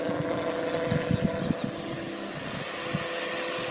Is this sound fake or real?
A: real